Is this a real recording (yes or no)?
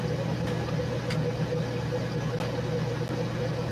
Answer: yes